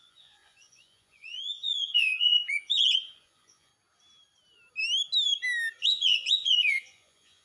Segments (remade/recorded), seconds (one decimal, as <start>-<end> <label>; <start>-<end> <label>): 0.0-3.7 remade; 3.7-5.8 recorded; 5.8-7.4 remade